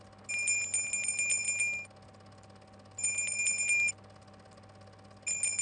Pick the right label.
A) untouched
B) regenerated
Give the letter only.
A